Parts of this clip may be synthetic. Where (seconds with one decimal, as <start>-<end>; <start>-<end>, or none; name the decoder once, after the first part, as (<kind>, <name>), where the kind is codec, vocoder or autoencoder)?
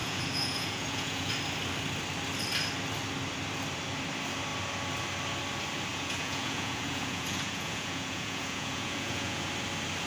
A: 0.0-1.3 (vocoder, Vocos); 5.9-9.5